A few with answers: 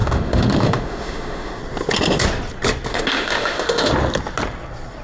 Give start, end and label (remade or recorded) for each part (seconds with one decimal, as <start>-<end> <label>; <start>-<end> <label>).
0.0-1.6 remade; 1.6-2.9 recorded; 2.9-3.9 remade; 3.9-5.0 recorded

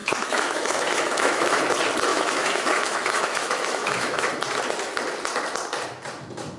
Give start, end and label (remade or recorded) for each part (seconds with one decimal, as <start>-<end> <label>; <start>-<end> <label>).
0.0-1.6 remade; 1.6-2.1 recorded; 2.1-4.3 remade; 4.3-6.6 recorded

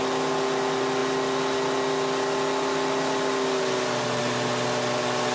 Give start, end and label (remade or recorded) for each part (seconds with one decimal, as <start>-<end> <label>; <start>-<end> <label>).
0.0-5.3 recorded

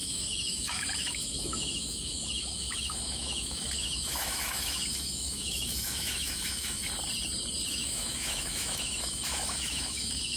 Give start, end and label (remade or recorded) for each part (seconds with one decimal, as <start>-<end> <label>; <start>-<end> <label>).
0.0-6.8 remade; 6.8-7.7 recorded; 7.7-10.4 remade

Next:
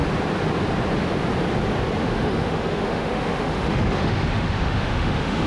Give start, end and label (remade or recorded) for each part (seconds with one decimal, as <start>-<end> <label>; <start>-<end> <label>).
0.0-2.0 recorded; 2.0-5.5 remade

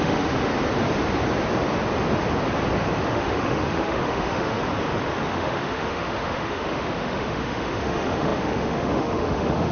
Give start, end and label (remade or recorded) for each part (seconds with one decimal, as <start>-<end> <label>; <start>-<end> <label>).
0.0-0.5 remade; 0.5-3.0 recorded; 3.0-4.6 remade; 4.6-5.3 recorded; 5.3-9.7 remade

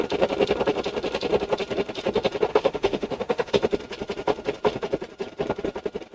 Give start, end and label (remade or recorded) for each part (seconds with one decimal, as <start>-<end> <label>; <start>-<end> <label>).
0.0-2.5 recorded; 2.5-3.5 remade; 3.5-6.1 recorded

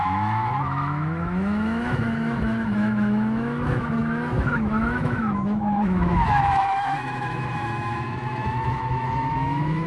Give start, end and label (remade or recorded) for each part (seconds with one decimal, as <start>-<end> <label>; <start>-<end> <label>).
0.0-9.9 remade